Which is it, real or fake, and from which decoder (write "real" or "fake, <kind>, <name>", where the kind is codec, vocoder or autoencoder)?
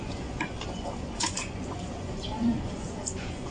fake, vocoder, Vocos